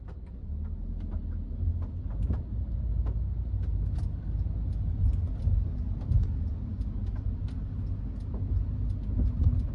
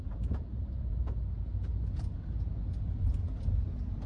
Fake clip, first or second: second